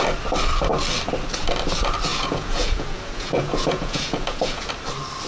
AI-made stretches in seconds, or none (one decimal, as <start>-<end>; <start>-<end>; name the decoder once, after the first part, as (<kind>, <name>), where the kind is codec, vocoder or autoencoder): 2.1-4.7 (vocoder, Vocos)